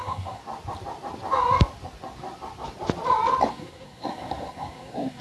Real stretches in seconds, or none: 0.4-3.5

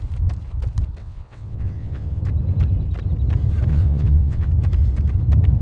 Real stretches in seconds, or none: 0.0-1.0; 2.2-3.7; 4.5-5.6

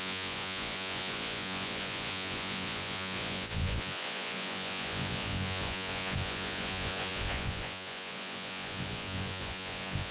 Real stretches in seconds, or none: none

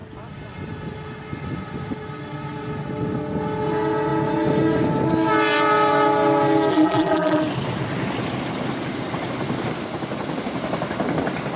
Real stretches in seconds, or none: 0.0-6.7; 7.4-11.6